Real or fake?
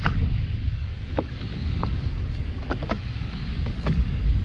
fake